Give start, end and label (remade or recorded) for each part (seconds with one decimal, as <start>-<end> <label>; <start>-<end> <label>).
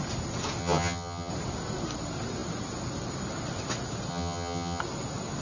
0.0-0.6 recorded; 0.6-1.3 remade; 1.3-4.1 recorded; 4.1-4.8 remade; 4.8-5.4 recorded